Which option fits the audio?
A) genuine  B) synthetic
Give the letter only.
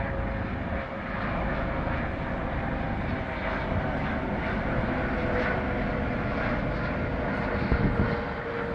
A